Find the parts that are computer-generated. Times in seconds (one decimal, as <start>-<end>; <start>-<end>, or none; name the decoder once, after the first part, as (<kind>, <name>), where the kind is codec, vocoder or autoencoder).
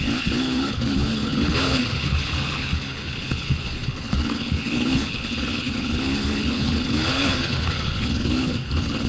0.0-9.1 (codec, HILCodec)